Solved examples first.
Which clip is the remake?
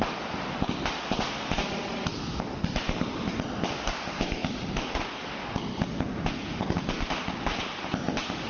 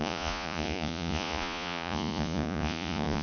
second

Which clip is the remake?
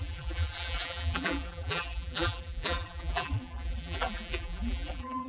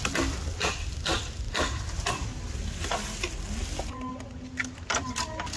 first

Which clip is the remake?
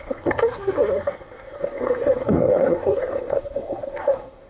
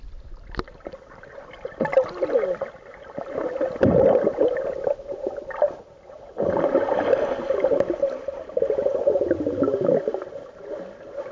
first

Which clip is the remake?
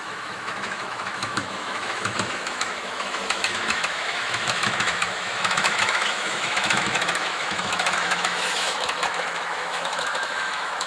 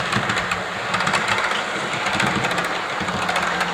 first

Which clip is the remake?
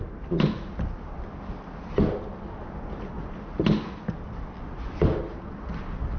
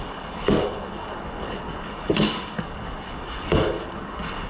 second